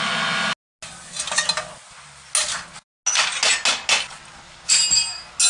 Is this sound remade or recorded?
recorded